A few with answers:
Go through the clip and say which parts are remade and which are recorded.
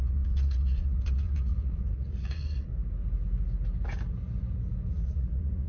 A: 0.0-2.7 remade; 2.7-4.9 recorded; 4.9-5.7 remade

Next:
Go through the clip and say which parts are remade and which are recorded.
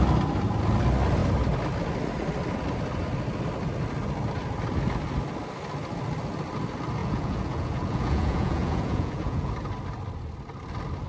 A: 0.0-7.0 recorded; 7.0-9.5 remade; 9.5-11.1 recorded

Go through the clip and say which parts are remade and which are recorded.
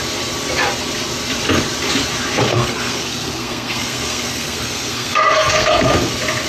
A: 0.0-2.5 recorded; 2.5-6.1 remade; 6.1-6.5 recorded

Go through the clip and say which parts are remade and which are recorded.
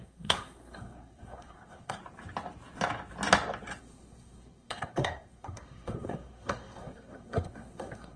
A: 0.0-2.0 remade; 2.0-3.8 recorded; 3.8-8.2 remade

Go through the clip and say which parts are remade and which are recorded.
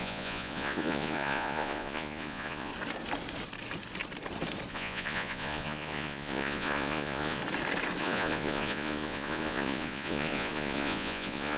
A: 0.0-2.7 remade; 2.7-4.7 recorded; 4.7-7.4 remade; 7.4-8.0 recorded; 8.0-11.6 remade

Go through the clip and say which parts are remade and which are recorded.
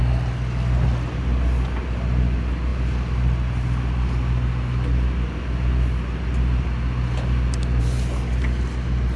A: 0.0-9.2 recorded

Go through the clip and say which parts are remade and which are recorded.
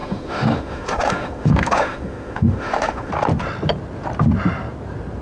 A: 0.0-3.1 remade; 3.1-5.2 recorded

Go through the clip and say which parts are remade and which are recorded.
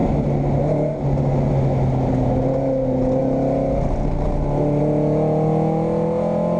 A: 0.0-6.6 recorded